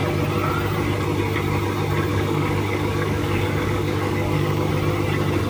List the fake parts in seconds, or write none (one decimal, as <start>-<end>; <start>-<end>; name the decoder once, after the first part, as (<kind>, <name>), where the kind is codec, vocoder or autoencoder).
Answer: 2.1-4.7 (codec, DAC)